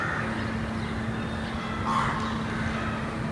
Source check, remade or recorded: recorded